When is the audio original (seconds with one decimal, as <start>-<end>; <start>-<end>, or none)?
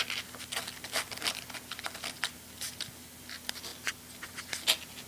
0.0-5.1